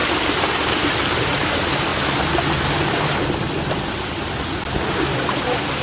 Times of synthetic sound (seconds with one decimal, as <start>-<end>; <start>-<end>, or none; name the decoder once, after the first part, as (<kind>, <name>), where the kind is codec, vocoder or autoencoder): none